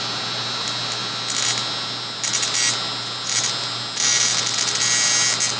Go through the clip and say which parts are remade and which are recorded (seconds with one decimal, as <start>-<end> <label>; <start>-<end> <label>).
0.0-5.6 recorded